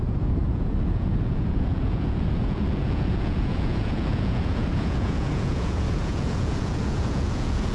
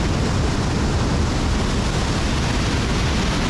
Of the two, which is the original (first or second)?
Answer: second